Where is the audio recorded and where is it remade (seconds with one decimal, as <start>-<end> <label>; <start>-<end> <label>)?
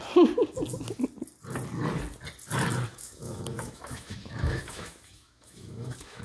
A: 0.0-2.9 recorded; 2.9-6.2 remade